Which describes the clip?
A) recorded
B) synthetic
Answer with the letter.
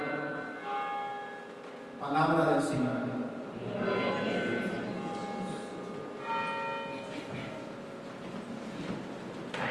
A